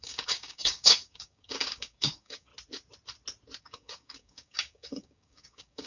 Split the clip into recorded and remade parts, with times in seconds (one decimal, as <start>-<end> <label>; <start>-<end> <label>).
0.0-2.5 remade; 2.5-3.6 recorded; 3.6-5.9 remade